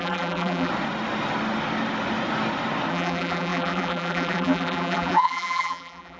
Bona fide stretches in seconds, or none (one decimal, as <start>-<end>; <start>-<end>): 0.7-2.9